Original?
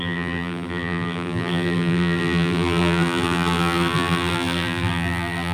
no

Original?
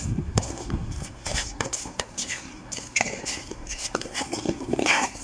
no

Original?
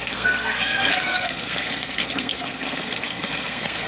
no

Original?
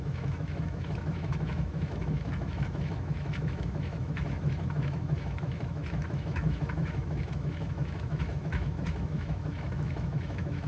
no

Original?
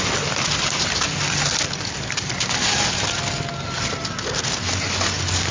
yes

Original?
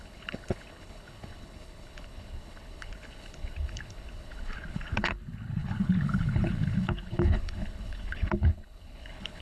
no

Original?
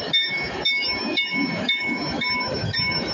no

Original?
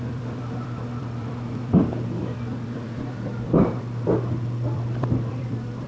no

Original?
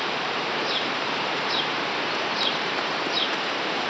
no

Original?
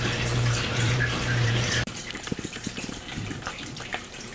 no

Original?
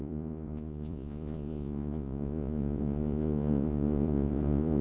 no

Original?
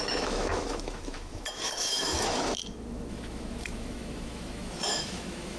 no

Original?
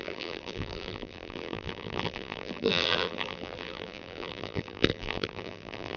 no